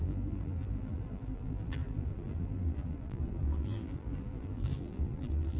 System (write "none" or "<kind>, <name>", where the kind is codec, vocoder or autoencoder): vocoder, BigVGAN v2